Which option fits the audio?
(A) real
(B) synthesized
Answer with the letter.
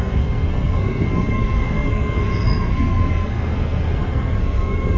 B